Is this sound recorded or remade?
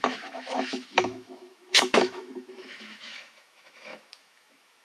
remade